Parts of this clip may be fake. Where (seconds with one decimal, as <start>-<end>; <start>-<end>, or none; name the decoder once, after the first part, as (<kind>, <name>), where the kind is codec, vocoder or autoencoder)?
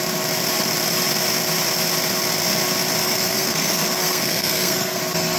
3.0-5.0 (codec, SNAC)